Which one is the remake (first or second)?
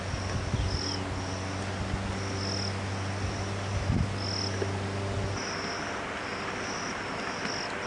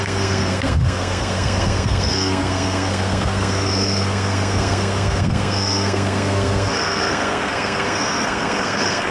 second